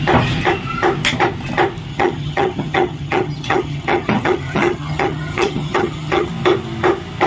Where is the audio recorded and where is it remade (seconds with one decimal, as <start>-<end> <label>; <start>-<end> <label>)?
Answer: 0.0-1.9 recorded; 1.9-6.3 remade; 6.3-7.3 recorded